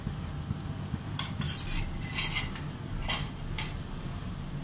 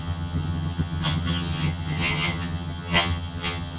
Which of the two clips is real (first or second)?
first